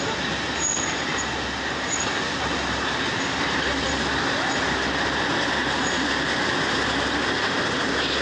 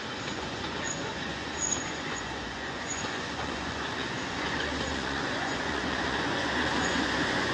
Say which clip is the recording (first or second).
first